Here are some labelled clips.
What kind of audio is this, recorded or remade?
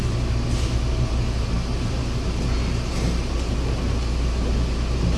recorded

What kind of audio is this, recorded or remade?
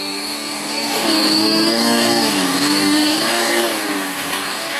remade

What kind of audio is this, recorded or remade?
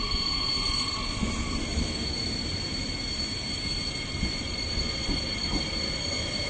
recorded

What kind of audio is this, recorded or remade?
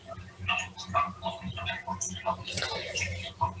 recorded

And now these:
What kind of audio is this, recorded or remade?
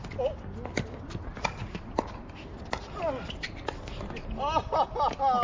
recorded